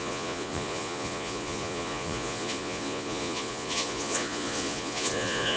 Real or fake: fake